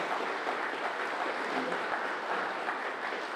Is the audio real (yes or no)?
yes